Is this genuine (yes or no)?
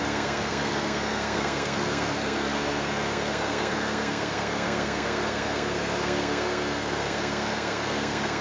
no